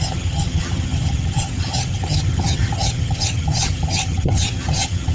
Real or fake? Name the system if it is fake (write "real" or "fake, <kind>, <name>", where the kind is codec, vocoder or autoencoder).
fake, vocoder, HiFi-GAN